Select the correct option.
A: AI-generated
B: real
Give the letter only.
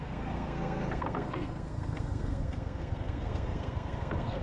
A